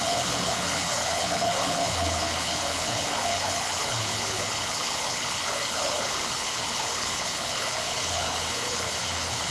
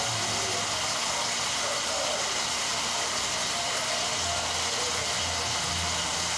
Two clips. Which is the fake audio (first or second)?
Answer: first